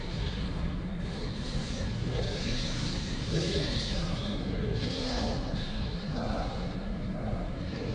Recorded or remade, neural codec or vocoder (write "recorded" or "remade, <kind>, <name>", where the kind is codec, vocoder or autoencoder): remade, codec, SNAC